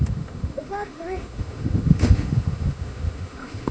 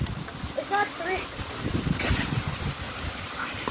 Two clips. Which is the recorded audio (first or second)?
second